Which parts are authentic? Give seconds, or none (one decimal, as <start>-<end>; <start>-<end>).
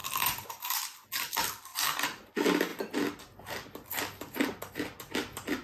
0.7-1.7; 2.3-5.6